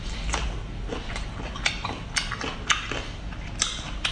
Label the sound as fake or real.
real